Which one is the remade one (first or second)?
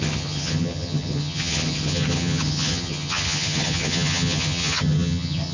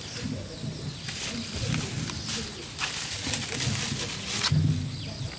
first